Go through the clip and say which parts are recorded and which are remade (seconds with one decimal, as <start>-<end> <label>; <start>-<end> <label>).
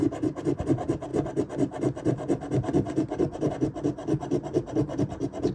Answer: 0.0-4.0 recorded; 4.0-5.0 remade; 5.0-5.5 recorded